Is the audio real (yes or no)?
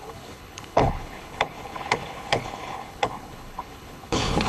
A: no